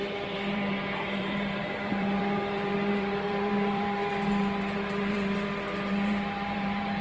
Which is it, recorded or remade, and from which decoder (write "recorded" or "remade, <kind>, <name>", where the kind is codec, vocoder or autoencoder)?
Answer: remade, vocoder, BigVGAN v2